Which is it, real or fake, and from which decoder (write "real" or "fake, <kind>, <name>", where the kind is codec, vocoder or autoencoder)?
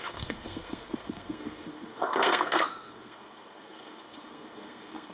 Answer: fake, codec, SNAC